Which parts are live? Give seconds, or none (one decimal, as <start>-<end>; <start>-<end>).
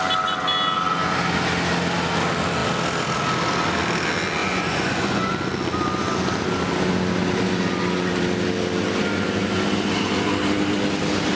0.0-4.4; 5.3-11.3